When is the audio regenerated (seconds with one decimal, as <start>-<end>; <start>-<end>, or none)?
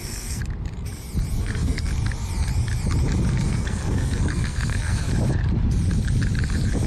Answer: 0.0-0.4; 1.4-1.9; 3.3-5.1